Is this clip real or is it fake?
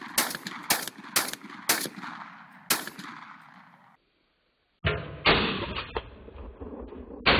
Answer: real